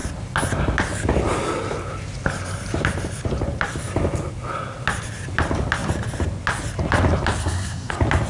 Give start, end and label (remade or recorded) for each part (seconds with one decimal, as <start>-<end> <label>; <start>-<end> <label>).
0.0-7.4 recorded; 7.4-7.9 remade; 7.9-8.3 recorded